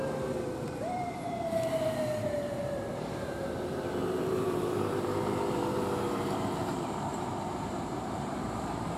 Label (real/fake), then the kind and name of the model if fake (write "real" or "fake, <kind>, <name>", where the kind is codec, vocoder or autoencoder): fake, vocoder, BigVGAN v2